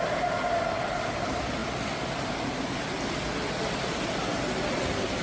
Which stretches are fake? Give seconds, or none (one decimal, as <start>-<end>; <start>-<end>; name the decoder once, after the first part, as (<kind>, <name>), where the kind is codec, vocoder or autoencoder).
none

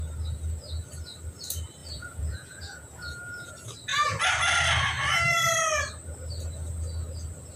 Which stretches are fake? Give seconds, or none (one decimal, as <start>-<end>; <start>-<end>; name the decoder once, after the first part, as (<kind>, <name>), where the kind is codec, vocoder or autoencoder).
1.8-3.5 (vocoder, Vocos)

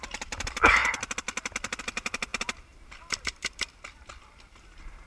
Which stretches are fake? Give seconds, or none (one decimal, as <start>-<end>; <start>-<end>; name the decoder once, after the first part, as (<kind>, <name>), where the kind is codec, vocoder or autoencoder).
0.0-0.8 (vocoder, BigVGAN v2); 1.8-2.3; 3.1-5.1

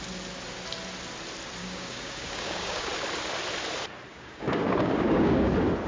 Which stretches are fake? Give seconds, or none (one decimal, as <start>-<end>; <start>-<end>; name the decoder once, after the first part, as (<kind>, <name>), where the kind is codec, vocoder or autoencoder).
1.6-2.9 (codec, DAC); 4.1-5.5

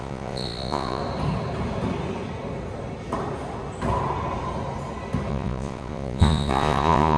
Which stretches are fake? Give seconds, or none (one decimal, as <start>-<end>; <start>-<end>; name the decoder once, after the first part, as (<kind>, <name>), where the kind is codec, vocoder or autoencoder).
0.0-1.0 (vocoder, Vocos); 5.3-7.2

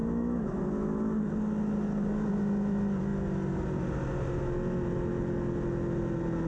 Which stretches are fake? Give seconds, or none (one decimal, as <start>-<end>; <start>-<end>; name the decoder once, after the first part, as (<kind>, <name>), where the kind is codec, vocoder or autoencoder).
0.0-0.6 (autoencoder, DAC-VAE)

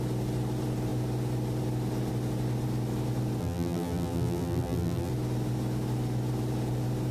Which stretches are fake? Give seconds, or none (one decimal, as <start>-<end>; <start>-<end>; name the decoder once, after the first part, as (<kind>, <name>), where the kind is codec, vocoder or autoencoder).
3.4-5.1 (vocoder, BigVGAN v2)

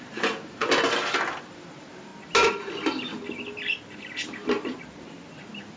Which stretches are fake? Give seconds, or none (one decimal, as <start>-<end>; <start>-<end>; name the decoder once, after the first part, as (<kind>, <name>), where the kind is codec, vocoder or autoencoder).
0.0-0.6 (vocoder, BigVGAN v2); 1.5-2.1